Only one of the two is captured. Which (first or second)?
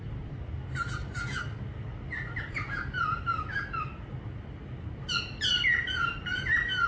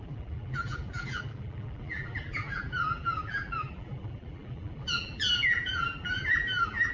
first